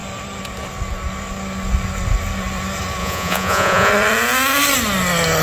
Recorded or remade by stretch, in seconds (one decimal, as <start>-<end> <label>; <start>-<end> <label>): 0.0-3.0 recorded; 3.0-3.9 remade; 3.9-5.4 recorded